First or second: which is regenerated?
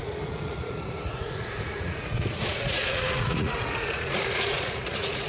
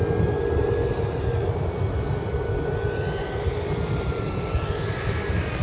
first